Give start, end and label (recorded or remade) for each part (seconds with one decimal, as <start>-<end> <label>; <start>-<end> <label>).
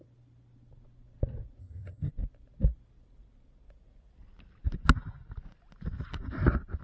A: 0.0-1.6 recorded; 1.6-2.1 remade; 2.1-6.8 recorded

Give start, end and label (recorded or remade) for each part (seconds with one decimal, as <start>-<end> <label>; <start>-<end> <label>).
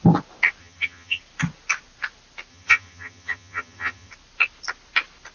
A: 0.0-0.6 recorded; 0.6-1.2 remade; 1.2-2.5 recorded; 2.5-4.1 remade; 4.1-5.3 recorded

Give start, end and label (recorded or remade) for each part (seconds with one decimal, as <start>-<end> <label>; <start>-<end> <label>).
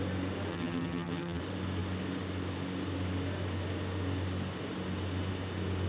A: 0.0-0.5 recorded; 0.5-1.4 remade; 1.4-5.9 recorded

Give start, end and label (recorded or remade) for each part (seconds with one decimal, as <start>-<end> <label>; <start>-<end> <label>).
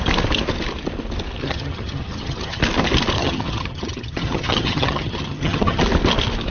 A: 0.0-1.4 recorded; 1.4-2.6 remade; 2.6-3.2 recorded; 3.2-5.8 remade; 5.8-6.5 recorded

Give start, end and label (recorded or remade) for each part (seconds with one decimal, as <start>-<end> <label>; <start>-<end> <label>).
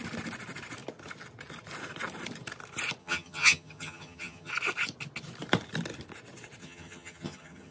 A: 0.0-3.0 recorded; 3.0-4.5 remade; 4.5-6.6 recorded; 6.6-7.7 remade